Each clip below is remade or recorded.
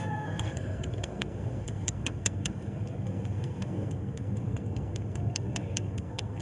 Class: remade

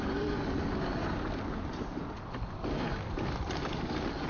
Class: recorded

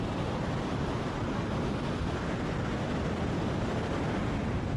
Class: recorded